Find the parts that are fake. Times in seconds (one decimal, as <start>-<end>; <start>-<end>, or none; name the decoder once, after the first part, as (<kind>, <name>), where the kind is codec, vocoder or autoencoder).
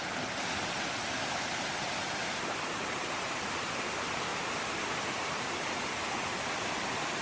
2.2-3.9 (vocoder, BigVGAN v2)